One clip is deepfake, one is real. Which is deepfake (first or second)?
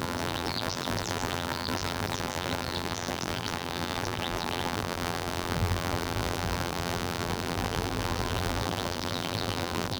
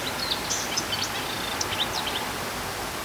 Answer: first